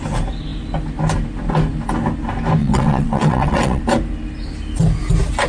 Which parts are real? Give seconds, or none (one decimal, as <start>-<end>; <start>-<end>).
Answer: 0.0-2.6; 3.8-5.5